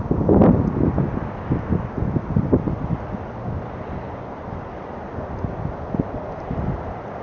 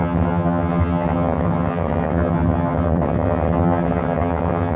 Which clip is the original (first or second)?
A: first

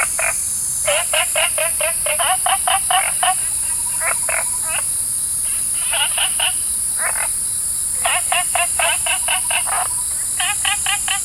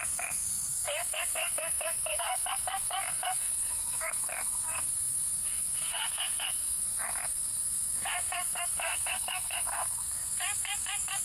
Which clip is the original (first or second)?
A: first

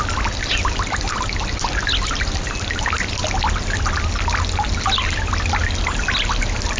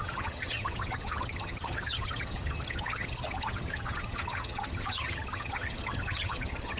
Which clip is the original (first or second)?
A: first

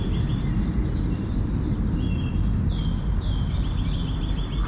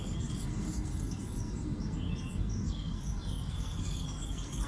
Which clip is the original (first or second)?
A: first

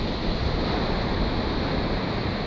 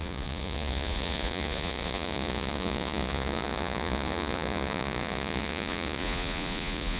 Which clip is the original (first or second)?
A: first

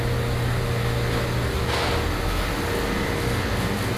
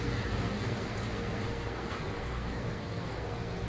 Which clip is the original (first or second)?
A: first